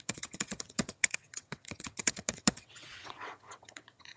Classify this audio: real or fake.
fake